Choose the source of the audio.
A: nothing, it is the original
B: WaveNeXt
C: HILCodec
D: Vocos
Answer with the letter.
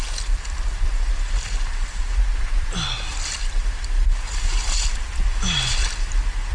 A